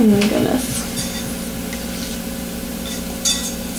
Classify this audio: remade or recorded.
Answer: recorded